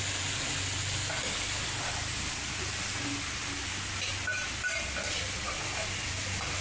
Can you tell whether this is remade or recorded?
recorded